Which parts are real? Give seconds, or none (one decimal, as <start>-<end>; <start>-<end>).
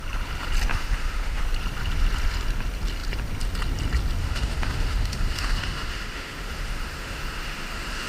0.0-0.7; 1.4-4.2